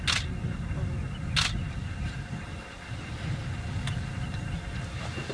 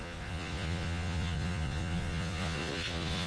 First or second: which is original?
first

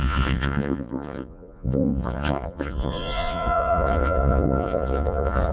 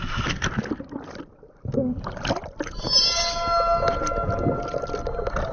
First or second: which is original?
second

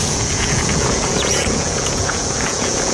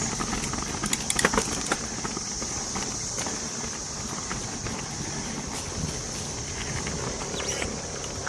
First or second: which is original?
second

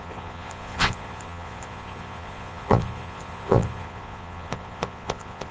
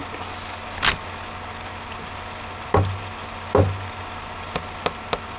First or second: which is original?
second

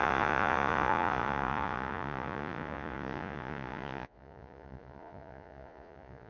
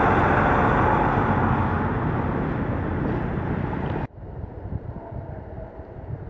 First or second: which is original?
second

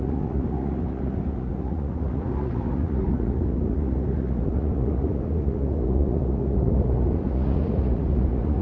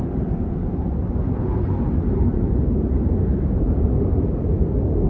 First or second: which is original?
second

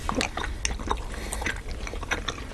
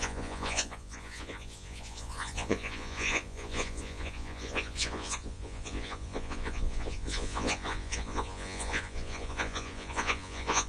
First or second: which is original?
first